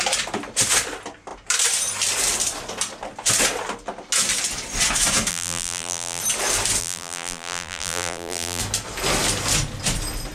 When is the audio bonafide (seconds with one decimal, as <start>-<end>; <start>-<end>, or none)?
0.0-5.3; 6.2-6.8; 8.6-10.3